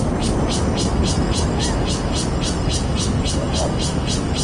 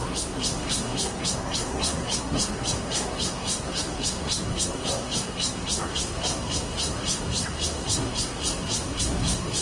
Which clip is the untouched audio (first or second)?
first